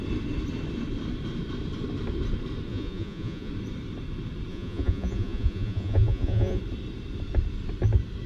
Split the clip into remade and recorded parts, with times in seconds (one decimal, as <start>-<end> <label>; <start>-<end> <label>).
0.0-2.7 recorded; 2.7-3.5 remade; 3.5-4.5 recorded; 4.5-6.6 remade; 6.6-8.3 recorded